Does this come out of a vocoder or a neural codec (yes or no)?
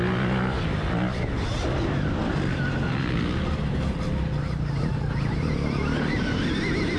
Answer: no